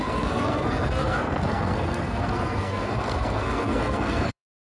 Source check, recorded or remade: remade